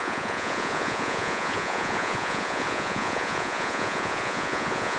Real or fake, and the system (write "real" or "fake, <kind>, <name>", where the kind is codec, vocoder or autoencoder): fake, vocoder, Vocos